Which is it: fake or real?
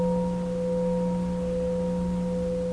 real